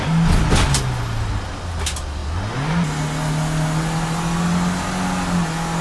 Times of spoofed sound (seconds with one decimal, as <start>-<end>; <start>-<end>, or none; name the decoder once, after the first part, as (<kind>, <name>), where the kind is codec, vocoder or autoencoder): none